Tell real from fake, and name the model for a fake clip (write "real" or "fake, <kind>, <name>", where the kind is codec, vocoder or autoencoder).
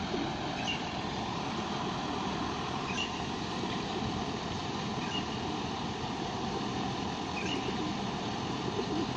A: fake, vocoder, BigVGAN v2